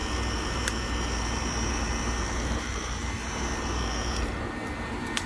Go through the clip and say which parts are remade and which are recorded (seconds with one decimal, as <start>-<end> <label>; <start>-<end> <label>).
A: 0.0-5.3 remade